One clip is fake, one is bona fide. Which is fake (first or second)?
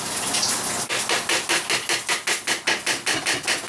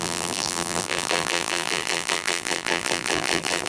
second